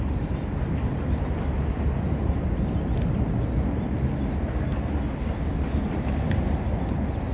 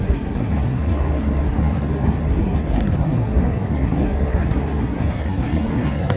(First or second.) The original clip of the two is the first